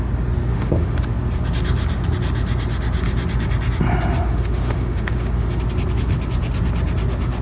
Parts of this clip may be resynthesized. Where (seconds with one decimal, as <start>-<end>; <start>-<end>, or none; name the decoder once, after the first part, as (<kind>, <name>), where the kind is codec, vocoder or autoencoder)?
0.5-1.0 (autoencoder, DAC-VAE); 4.3-5.6